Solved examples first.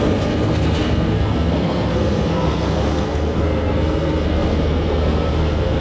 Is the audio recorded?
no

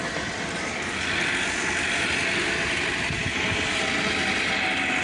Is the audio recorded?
yes